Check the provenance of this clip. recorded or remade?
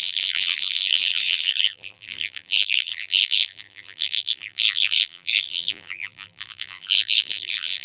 remade